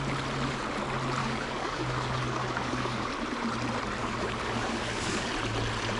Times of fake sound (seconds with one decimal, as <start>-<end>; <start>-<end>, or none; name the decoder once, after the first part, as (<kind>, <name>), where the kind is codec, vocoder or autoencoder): 1.2-3.1 (codec, DAC); 4.0-5.3